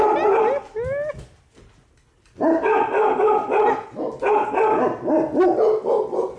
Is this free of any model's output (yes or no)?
yes